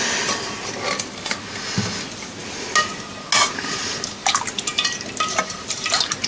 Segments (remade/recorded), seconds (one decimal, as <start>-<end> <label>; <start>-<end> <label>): 0.0-6.3 recorded